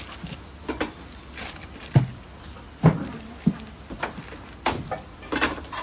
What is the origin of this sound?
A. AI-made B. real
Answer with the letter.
B